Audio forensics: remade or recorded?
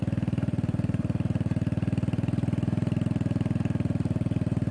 recorded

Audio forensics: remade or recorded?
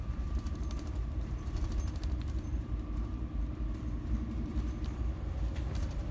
remade